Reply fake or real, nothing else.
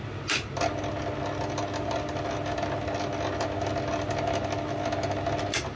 real